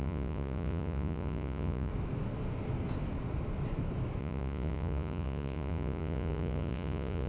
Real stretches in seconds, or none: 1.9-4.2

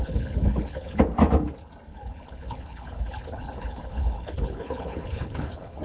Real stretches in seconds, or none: 1.0-1.9